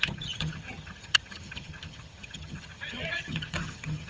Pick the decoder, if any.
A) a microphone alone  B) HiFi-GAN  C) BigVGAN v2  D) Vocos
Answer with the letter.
B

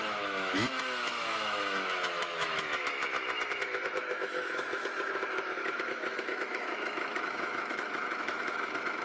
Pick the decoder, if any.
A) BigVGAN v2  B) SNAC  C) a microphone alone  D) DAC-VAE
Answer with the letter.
D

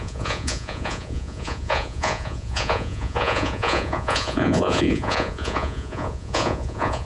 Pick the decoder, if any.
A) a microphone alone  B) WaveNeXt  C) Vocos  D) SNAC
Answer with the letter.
C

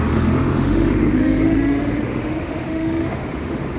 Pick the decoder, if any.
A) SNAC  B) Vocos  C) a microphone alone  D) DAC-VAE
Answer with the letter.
D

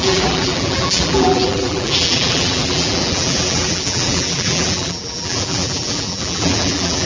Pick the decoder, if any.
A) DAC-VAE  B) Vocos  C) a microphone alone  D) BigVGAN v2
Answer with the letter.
D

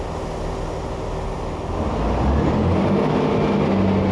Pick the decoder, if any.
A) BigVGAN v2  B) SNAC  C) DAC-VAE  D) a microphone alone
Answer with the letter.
D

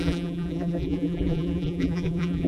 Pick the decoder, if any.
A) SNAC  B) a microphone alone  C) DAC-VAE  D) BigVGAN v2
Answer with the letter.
D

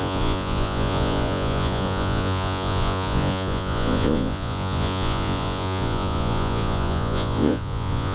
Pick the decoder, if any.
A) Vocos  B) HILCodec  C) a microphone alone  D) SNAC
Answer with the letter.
A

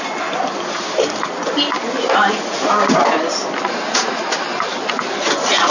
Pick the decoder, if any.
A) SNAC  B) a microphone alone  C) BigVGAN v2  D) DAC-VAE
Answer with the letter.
B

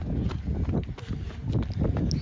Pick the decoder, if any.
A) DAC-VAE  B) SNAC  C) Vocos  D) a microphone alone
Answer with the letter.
D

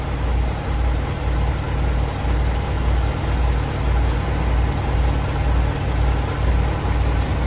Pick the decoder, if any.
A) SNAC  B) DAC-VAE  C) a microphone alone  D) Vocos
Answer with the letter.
C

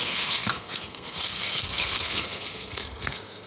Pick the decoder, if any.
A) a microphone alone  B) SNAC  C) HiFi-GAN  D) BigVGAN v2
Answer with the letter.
B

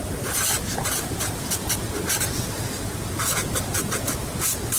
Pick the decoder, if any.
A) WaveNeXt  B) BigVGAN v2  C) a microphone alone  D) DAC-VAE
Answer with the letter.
C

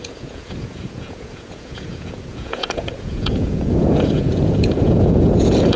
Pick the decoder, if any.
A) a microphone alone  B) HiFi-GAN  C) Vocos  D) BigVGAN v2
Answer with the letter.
C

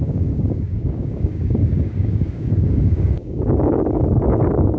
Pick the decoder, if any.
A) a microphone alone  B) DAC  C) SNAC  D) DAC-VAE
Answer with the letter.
B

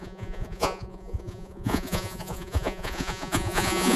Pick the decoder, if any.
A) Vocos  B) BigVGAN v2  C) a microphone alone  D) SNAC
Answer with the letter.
A